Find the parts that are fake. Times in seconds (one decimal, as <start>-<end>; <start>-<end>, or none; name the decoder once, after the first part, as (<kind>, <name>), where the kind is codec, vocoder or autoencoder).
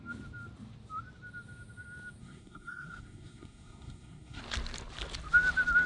2.2-4.4 (codec, SNAC)